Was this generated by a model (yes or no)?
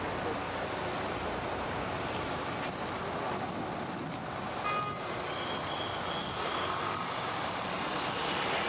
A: no